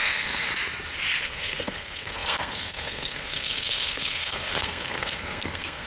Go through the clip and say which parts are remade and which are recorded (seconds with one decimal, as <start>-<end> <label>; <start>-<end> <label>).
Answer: 0.0-0.5 remade; 0.5-1.2 recorded; 1.2-5.9 remade